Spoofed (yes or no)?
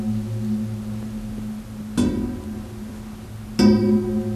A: no